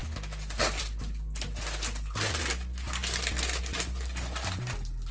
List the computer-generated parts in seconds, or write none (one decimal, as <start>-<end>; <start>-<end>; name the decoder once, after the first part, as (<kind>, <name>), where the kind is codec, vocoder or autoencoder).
none